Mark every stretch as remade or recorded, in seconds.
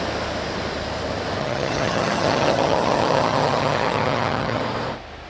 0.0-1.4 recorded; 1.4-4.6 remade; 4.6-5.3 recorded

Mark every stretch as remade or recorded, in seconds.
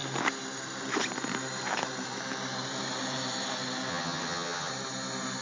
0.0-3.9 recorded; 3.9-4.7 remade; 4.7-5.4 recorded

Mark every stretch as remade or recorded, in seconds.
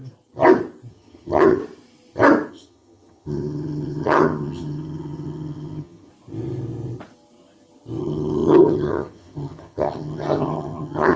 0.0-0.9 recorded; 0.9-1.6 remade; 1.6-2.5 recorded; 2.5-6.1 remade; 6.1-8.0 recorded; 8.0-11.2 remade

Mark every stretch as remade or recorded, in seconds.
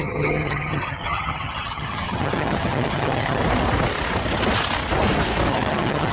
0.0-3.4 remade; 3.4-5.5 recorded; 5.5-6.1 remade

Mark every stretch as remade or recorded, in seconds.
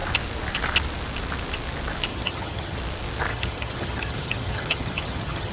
0.0-2.1 recorded; 2.1-2.8 remade; 2.8-3.3 recorded; 3.3-5.5 remade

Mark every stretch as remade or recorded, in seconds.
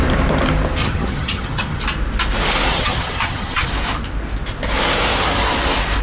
0.0-0.8 recorded; 0.8-1.8 remade; 1.8-2.7 recorded; 2.7-3.7 remade; 3.7-6.0 recorded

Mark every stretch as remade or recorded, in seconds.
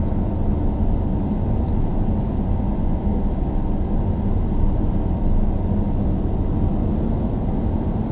0.0-8.1 recorded